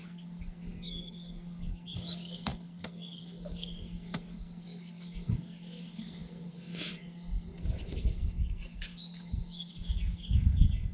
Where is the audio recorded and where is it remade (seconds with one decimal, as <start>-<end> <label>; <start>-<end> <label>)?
0.0-10.9 remade